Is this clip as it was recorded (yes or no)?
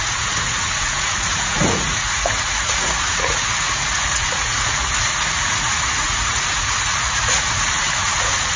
no